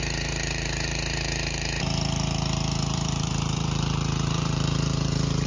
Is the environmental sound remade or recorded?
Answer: remade